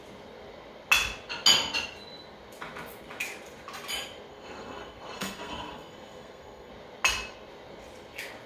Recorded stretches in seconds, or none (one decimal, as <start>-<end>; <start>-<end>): 0.0-4.3; 6.7-8.5